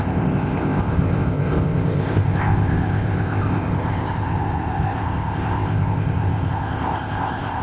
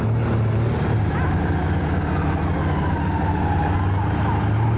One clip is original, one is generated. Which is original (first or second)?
second